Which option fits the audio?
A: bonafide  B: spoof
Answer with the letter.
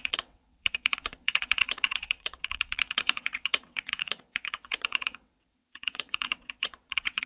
B